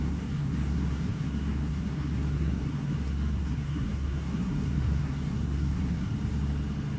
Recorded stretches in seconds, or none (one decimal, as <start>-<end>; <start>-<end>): 6.1-7.0